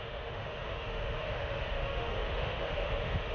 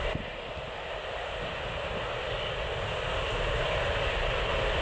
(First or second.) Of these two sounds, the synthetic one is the first